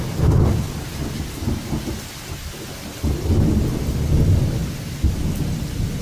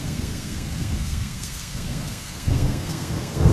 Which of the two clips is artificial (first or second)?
second